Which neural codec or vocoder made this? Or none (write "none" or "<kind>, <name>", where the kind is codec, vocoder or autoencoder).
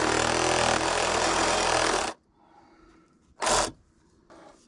none